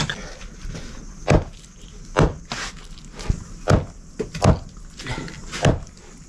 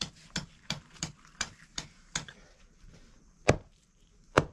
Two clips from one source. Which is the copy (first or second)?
second